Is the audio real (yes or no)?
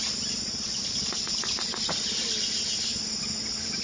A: yes